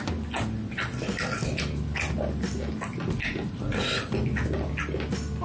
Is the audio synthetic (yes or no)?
no